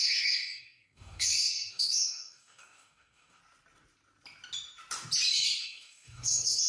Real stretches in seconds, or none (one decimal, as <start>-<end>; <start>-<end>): 3.4-5.6